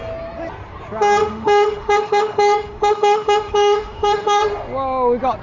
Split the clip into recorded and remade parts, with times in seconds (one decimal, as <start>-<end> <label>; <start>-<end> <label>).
0.0-1.2 recorded; 1.2-4.4 remade; 4.4-5.4 recorded